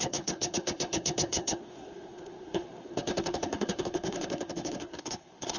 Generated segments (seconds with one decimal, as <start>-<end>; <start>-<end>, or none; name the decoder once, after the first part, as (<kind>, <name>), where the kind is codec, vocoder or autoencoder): 0.0-5.6 (codec, SNAC)